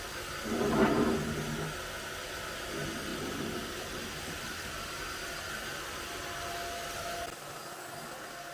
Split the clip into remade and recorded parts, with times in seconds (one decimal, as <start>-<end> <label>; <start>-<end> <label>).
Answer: 0.0-3.1 recorded; 3.1-4.9 remade; 4.9-8.5 recorded